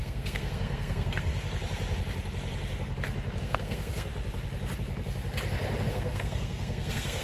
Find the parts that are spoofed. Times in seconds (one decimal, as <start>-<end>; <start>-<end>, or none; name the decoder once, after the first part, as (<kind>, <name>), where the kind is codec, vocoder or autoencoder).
0.0-1.3 (codec, SNAC); 3.4-4.1; 5.9-7.2

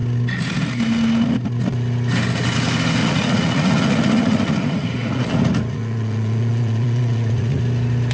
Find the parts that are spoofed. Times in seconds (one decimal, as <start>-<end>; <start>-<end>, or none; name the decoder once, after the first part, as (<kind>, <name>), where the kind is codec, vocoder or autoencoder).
3.0-7.6 (vocoder, Vocos)

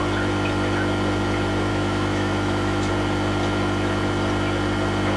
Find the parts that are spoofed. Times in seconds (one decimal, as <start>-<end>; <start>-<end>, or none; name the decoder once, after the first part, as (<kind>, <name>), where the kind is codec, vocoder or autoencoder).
1.7-2.9 (autoencoder, DAC-VAE)

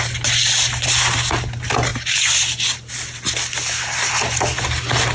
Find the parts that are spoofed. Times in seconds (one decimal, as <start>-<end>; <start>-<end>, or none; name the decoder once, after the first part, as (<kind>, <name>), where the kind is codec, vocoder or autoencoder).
none

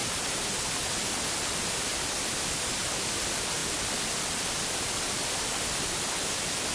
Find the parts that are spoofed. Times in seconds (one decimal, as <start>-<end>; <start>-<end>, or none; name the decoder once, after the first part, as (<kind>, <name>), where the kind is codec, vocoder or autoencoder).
none

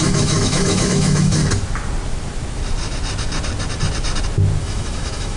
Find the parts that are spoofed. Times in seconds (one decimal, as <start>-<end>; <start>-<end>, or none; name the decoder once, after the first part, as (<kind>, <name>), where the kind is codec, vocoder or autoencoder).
0.0-1.4 (autoencoder, DAC-VAE); 4.6-5.4

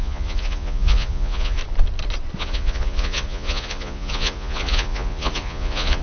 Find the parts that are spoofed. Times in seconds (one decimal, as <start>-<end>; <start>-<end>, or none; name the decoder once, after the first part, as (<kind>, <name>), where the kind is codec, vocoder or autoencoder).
0.0-1.6 (vocoder, Vocos); 2.4-6.0